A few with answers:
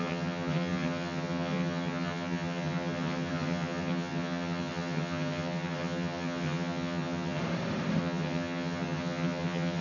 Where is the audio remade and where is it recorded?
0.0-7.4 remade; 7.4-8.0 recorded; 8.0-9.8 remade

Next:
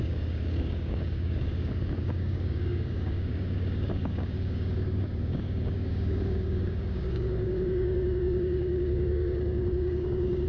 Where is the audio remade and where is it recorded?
0.0-10.5 remade